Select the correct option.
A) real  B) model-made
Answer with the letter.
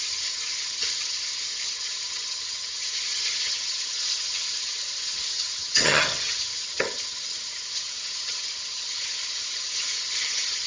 B